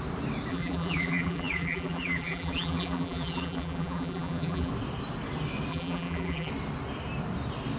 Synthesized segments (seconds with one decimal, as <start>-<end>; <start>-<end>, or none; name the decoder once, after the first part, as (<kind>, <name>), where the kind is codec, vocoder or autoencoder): 0.5-4.7 (vocoder, BigVGAN v2); 5.7-6.5